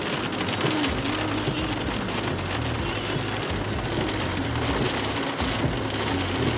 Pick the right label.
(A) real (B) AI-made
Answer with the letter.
A